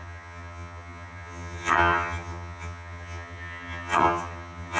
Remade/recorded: remade